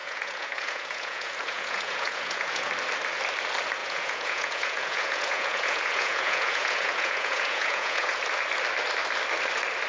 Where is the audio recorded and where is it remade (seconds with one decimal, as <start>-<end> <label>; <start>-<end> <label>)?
0.0-2.7 remade; 2.7-3.8 recorded; 3.8-8.2 remade; 8.2-9.9 recorded